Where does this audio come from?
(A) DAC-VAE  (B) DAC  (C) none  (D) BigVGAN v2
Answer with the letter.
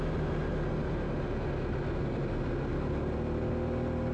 C